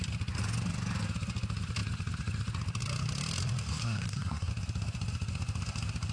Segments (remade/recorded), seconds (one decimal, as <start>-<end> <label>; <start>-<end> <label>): 0.0-3.7 recorded; 3.7-4.5 remade; 4.5-6.1 recorded